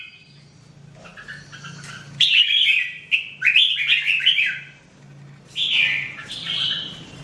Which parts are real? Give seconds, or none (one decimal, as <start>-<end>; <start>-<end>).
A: 0.0-6.2